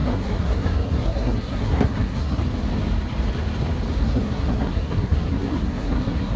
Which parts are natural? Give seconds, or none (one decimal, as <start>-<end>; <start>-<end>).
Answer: 2.4-4.0